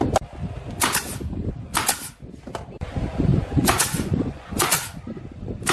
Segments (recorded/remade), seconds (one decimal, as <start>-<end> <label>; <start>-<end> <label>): 0.0-3.3 recorded; 3.3-4.8 remade; 4.8-5.7 recorded